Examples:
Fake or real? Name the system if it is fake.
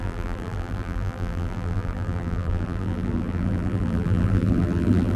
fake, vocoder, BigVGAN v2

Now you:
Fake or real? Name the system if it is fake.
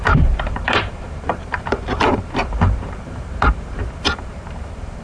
fake, vocoder, BigVGAN v2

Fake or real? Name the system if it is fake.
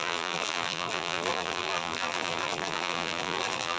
fake, vocoder, BigVGAN v2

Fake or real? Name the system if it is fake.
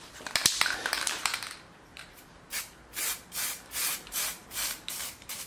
fake, vocoder, BigVGAN v2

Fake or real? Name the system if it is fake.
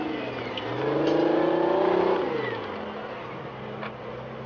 real